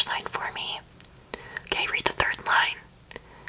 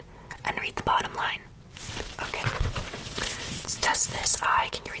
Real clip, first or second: first